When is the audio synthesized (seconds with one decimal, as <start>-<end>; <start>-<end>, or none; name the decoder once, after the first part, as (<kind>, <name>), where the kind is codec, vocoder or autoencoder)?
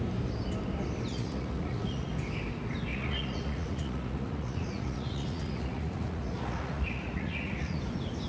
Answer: 1.1-2.1 (vocoder, Vocos); 2.9-7.8